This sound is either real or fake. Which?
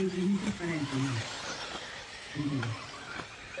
real